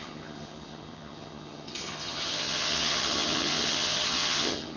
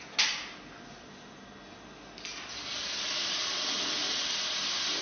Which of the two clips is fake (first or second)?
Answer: first